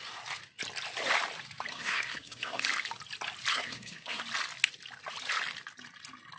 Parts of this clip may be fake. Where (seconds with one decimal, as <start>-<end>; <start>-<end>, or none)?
1.7-2.6; 3.5-4.2